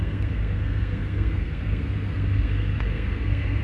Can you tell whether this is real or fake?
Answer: fake